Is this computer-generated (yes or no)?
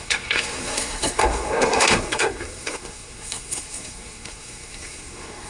yes